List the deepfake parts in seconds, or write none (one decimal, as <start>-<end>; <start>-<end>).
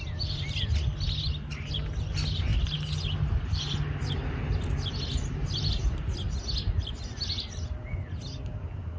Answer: none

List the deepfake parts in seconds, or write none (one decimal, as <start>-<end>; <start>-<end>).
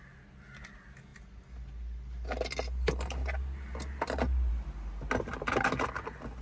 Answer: none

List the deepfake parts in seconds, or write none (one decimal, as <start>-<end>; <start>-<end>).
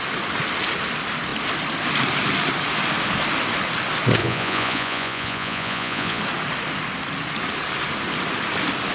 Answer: 4.2-6.2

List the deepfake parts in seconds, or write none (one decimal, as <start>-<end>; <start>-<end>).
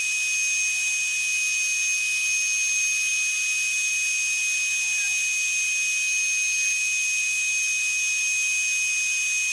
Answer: none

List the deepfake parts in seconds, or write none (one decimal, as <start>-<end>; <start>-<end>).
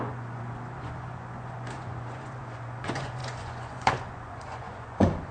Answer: 0.0-5.3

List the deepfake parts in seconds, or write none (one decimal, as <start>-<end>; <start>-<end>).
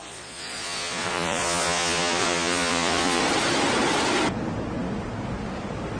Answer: 0.0-3.2